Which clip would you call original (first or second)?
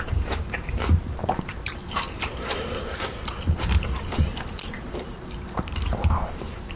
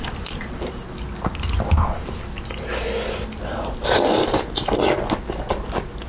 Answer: second